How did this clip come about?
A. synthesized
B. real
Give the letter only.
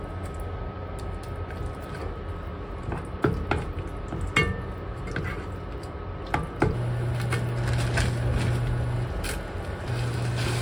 B